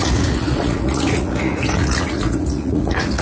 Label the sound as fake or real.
fake